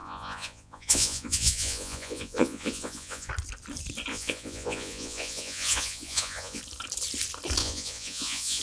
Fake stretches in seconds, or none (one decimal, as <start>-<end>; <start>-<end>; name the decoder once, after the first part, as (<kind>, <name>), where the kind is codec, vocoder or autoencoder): 0.0-3.3 (vocoder, Vocos); 4.1-6.6; 7.6-8.6